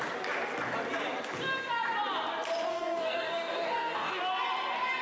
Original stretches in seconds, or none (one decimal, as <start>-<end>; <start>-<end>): 0.0-2.7; 4.2-5.0